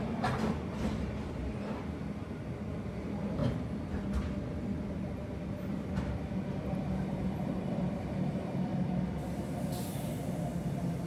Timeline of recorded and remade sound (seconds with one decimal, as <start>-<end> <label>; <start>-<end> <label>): 0.0-3.4 remade; 3.4-4.8 recorded; 4.8-8.7 remade; 8.7-9.9 recorded; 9.9-11.1 remade